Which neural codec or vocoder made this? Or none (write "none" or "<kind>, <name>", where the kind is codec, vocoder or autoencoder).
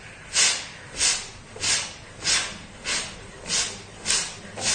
none